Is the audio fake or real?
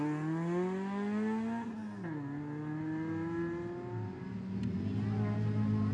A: real